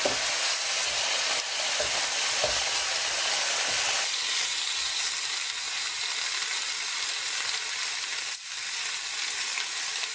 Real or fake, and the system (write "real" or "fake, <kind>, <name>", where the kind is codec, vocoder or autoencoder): real